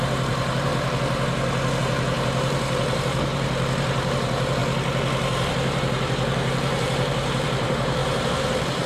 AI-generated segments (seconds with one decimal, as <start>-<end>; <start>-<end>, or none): 0.0-0.7; 1.8-4.6; 5.5-8.9